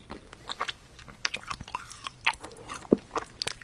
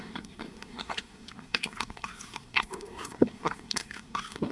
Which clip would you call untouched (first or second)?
first